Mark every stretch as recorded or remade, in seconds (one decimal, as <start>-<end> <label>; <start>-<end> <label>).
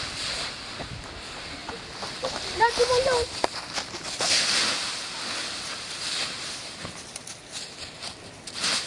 0.0-8.9 recorded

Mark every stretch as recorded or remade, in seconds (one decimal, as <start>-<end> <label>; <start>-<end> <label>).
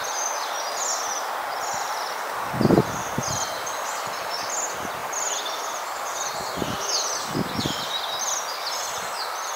0.0-9.6 recorded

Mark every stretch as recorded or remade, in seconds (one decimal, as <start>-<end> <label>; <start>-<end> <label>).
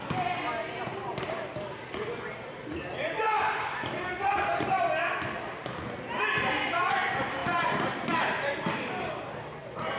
0.0-10.0 recorded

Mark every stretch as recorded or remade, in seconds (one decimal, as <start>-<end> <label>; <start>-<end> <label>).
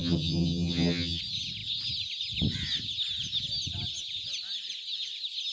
0.0-1.2 remade; 1.2-5.5 recorded